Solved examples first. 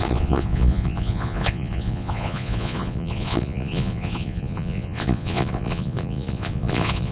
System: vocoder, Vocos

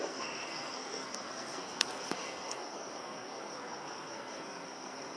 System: codec, SNAC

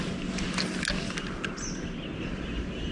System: none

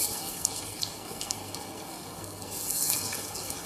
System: codec, SNAC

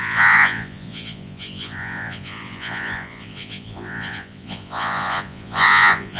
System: vocoder, Vocos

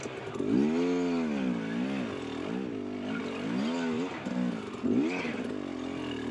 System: none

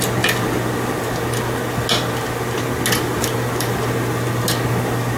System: none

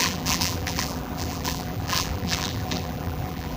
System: vocoder, BigVGAN v2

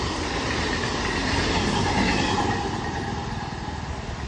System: none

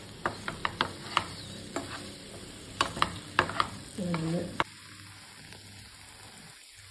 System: none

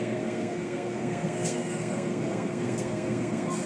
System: codec, SNAC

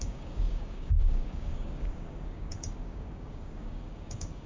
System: codec, DAC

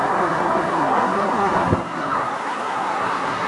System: codec, SNAC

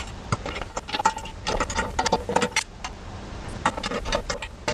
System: vocoder, BigVGAN v2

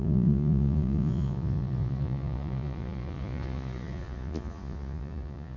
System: vocoder, Vocos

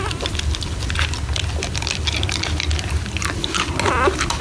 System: none